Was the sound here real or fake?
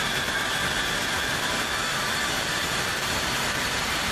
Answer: real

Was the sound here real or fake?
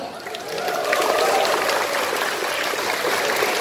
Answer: real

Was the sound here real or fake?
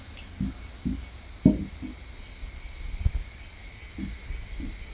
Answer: real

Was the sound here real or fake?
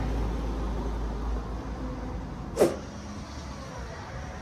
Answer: real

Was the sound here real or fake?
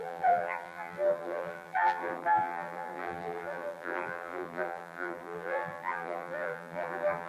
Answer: fake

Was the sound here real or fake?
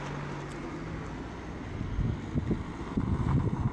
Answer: real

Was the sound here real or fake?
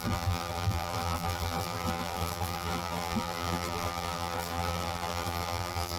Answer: fake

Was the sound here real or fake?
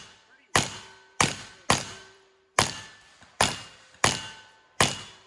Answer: fake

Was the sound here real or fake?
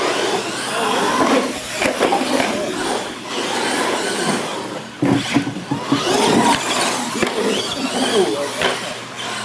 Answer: real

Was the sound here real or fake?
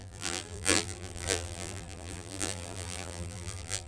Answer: fake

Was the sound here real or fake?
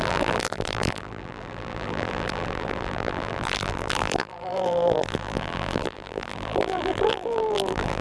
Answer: fake